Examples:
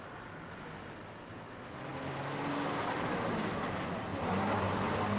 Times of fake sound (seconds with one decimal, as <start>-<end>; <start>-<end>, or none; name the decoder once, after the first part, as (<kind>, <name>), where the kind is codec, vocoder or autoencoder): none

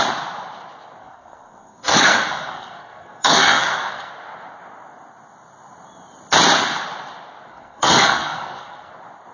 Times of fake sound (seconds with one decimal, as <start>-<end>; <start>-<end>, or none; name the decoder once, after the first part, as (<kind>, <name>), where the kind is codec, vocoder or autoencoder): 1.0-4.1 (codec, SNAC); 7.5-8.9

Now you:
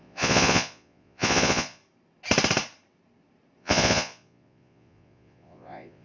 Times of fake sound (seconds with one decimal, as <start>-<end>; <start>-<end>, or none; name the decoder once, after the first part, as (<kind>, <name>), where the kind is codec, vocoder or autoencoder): 0.0-1.8 (vocoder, Vocos); 3.6-6.0

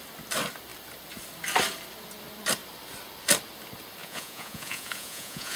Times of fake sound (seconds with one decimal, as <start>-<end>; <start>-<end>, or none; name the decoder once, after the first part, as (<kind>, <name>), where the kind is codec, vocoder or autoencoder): 4.0-5.6 (vocoder, Vocos)

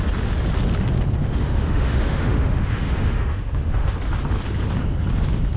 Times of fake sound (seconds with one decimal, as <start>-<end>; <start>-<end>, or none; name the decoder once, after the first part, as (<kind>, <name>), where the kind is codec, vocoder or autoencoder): 1.2-4.0 (autoencoder, DAC-VAE)